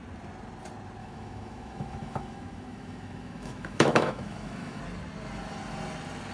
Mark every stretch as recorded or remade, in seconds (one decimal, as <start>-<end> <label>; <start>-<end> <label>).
0.0-1.0 recorded; 1.0-4.8 remade; 4.8-6.3 recorded